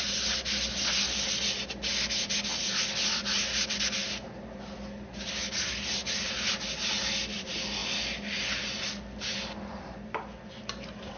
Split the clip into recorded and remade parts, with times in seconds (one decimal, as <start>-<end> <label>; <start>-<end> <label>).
0.0-11.2 recorded